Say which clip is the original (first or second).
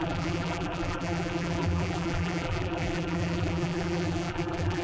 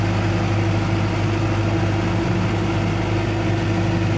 second